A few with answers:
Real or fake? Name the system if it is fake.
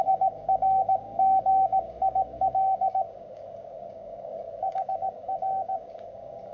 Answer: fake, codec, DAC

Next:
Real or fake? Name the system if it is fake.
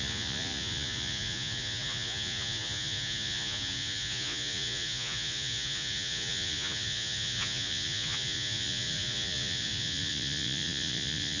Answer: fake, vocoder, Vocos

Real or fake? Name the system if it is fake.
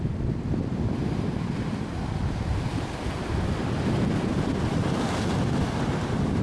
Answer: real